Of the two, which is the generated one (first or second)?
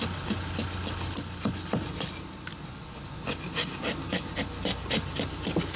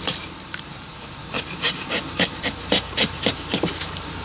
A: second